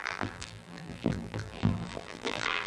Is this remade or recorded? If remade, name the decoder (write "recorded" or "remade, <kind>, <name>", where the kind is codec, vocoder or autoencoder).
remade, vocoder, BigVGAN v2